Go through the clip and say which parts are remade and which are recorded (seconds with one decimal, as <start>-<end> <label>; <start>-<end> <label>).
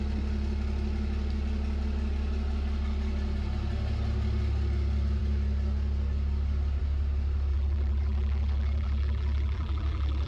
0.0-7.5 recorded; 7.5-10.3 remade